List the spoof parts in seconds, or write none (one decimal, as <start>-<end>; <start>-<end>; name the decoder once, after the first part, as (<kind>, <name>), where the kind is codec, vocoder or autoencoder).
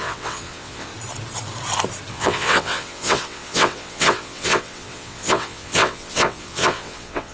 0.0-0.9 (vocoder, WaveNeXt); 2.1-7.3